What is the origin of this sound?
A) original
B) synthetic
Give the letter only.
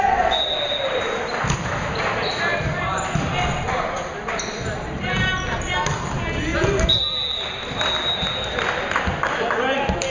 A